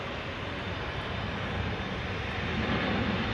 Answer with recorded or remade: recorded